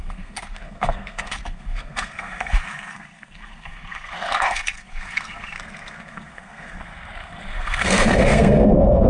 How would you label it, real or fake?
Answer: fake